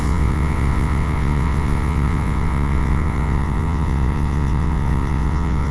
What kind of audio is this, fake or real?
fake